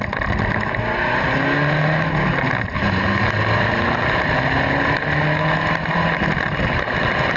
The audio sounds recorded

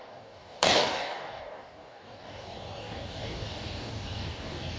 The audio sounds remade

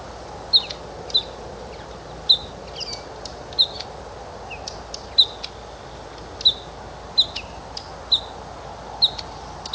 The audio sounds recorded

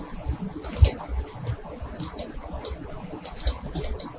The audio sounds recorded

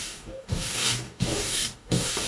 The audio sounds remade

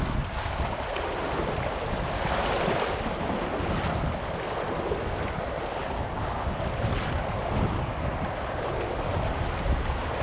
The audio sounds recorded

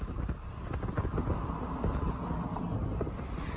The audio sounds recorded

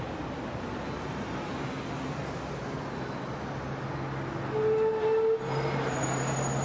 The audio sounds recorded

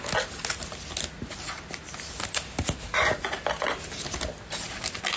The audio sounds recorded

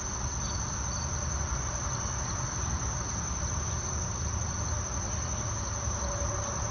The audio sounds recorded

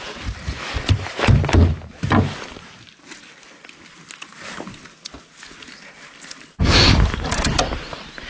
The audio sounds recorded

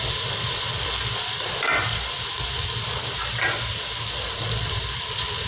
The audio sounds recorded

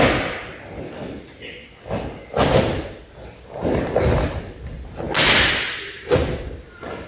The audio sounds recorded